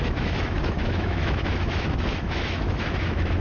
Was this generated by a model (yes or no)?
yes